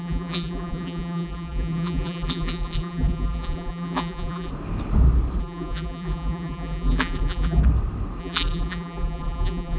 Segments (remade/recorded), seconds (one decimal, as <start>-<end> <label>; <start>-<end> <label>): 0.0-4.5 remade; 4.5-5.4 recorded; 5.4-7.6 remade; 7.6-8.2 recorded; 8.2-9.8 remade